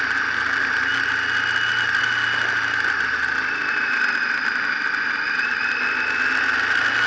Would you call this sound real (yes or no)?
yes